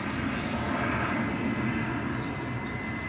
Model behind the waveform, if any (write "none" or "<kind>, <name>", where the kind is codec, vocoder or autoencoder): none